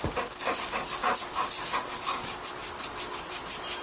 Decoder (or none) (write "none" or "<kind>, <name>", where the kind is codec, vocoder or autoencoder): none